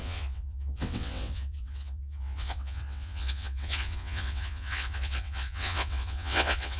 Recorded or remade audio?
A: remade